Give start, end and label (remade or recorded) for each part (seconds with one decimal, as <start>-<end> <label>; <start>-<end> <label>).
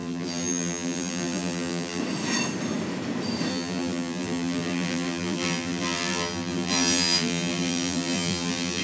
0.0-2.0 remade; 2.0-3.5 recorded; 3.5-8.8 remade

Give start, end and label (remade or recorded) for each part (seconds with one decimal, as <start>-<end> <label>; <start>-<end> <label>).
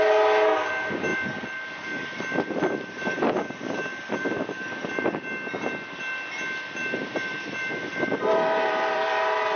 0.0-1.1 recorded; 1.1-5.1 remade; 5.1-6.8 recorded; 6.8-9.2 remade; 9.2-9.6 recorded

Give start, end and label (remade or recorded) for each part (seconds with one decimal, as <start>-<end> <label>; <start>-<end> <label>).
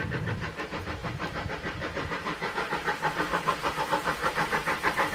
0.0-1.0 recorded; 1.0-3.8 remade; 3.8-5.1 recorded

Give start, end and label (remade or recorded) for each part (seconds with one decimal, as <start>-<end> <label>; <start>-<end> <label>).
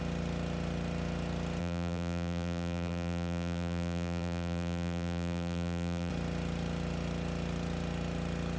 0.0-1.6 recorded; 1.6-6.1 remade; 6.1-8.6 recorded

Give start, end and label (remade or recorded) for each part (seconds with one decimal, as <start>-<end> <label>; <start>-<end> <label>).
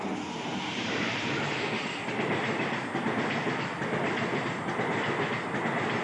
0.0-0.5 recorded; 0.5-1.7 remade; 1.7-6.0 recorded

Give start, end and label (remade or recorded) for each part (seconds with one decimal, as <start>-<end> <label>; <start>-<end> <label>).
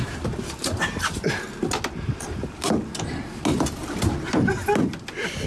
0.0-5.5 recorded